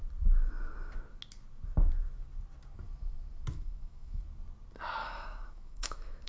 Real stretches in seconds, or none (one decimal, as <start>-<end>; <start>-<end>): 0.0-3.5; 4.2-5.0